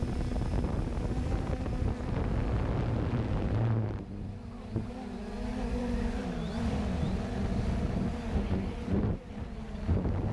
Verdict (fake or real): real